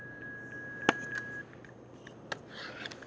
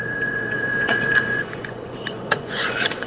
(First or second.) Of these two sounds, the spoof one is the second